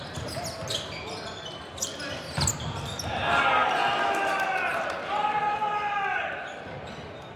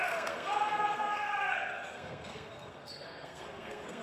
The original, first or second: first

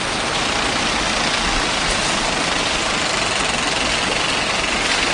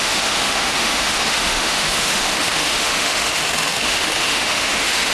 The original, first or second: first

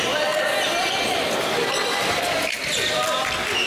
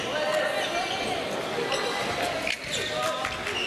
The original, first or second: second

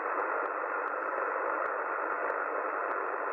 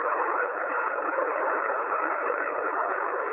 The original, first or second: first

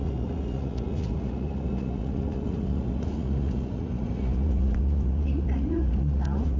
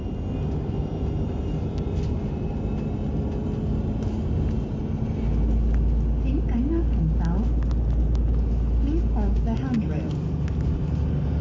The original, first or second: second